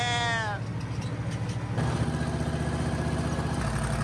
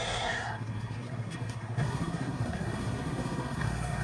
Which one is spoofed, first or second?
second